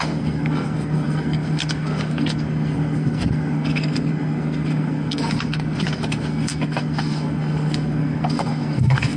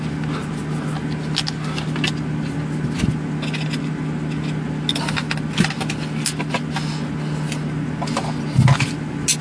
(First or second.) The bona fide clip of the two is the second